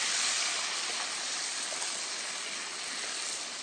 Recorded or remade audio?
recorded